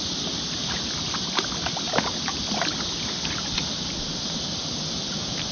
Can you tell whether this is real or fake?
real